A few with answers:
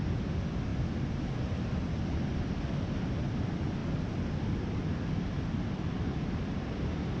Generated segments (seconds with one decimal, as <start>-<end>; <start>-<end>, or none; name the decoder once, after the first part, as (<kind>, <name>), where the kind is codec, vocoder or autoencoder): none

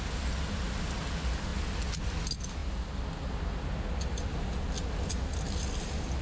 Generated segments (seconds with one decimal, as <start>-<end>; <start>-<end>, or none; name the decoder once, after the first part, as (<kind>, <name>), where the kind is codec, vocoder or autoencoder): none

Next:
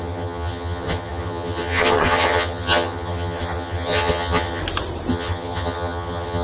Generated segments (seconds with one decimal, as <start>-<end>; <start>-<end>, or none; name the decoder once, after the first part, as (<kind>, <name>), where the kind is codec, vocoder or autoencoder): 0.0-4.6 (vocoder, HiFi-GAN); 5.1-6.4

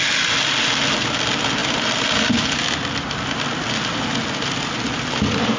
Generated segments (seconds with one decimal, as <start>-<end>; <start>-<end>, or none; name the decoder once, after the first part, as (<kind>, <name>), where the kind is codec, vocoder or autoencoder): none

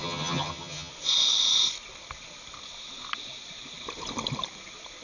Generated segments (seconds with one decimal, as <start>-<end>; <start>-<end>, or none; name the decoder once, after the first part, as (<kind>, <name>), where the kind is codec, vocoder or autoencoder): 0.0-0.9 (vocoder, HiFi-GAN)

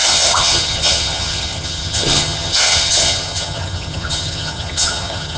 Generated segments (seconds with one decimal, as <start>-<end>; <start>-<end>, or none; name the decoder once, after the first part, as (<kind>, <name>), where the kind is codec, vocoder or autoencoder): 0.0-5.4 (vocoder, HiFi-GAN)

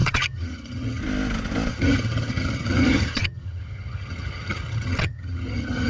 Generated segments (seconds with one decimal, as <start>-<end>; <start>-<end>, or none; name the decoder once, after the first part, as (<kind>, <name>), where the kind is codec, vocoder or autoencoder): 0.0-1.0 (vocoder, HiFi-GAN); 1.7-5.9

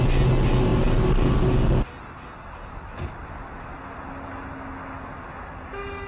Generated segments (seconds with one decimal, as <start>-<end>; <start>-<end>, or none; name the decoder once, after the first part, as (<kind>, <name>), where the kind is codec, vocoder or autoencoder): none